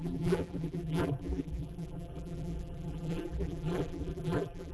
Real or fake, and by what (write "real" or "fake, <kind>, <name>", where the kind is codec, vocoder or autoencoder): fake, vocoder, BigVGAN v2